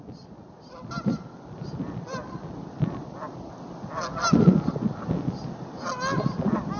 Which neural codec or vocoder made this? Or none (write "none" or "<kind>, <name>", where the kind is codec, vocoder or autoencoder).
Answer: none